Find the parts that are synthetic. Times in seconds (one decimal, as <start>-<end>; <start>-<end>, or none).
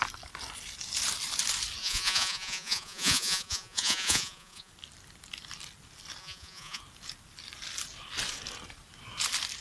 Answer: 1.8-4.7; 6.2-6.8